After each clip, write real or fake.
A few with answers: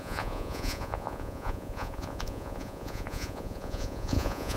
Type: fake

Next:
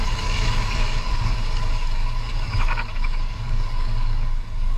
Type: fake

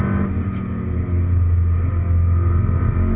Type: real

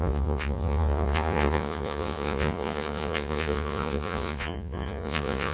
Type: fake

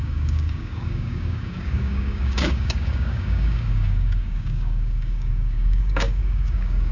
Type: fake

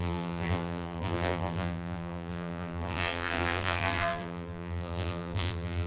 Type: fake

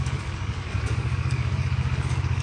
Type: fake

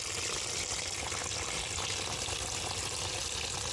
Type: real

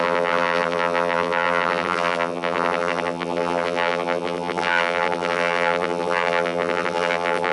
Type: fake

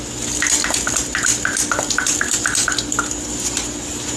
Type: real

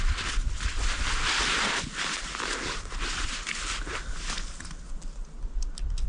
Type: real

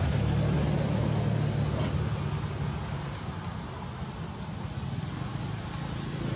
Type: real